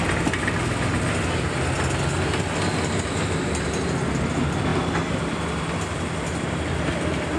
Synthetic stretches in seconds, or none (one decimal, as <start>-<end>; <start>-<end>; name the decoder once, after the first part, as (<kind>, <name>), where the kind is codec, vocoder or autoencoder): none